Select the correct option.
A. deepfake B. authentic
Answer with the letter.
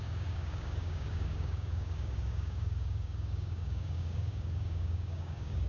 A